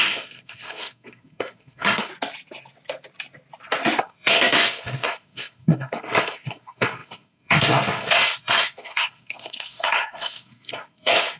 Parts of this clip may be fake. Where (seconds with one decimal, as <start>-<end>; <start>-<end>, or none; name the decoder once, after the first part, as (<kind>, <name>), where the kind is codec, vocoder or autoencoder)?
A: 0.0-2.1 (codec, SNAC); 4.0-11.4